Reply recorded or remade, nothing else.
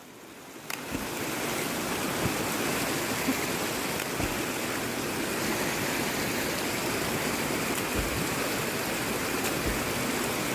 recorded